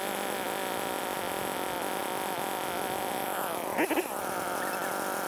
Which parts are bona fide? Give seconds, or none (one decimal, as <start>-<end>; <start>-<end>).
0.0-5.3